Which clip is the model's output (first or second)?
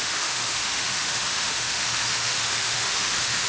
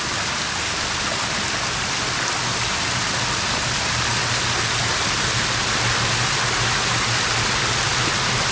first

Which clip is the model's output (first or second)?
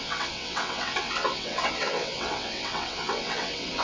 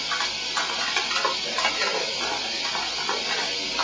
first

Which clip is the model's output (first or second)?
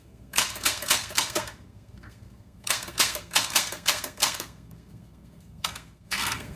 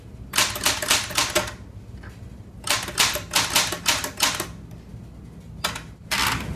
first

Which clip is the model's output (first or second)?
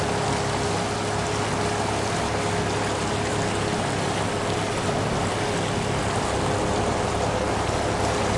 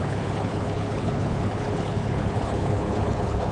second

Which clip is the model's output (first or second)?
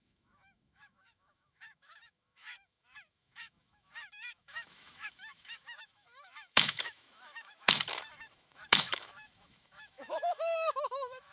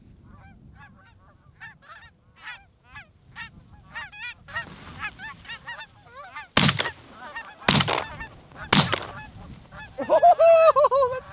first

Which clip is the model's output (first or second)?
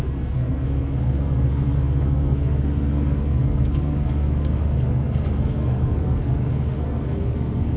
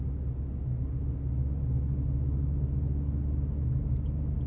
first